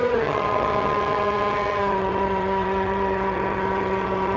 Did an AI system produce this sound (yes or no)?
yes